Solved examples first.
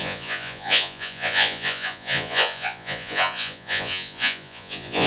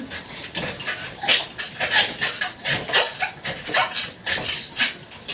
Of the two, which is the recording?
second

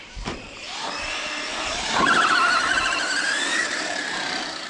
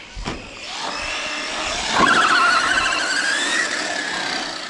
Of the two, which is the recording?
second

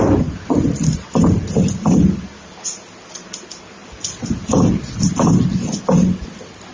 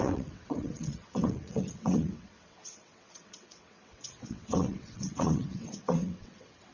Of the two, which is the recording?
first